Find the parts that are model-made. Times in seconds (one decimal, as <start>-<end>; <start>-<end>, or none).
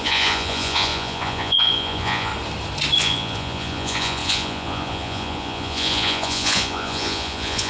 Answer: 0.0-2.3; 3.0-7.7